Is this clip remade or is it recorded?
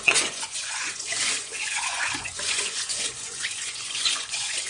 remade